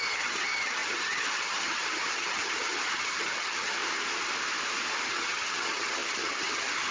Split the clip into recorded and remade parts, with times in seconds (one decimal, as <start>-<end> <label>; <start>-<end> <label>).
0.0-3.8 remade; 3.8-5.1 recorded; 5.1-6.9 remade